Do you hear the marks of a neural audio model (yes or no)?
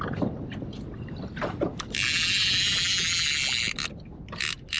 no